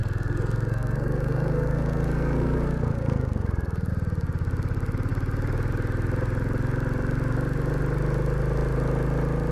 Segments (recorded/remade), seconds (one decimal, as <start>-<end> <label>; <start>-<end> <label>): 0.0-3.9 remade; 3.9-9.5 recorded